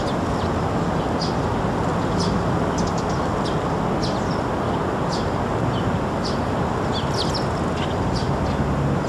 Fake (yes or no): no